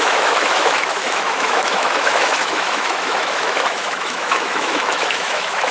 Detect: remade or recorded remade